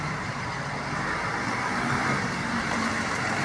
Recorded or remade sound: remade